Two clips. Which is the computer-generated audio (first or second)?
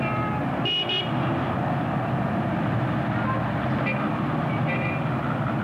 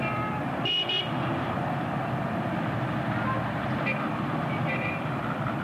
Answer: second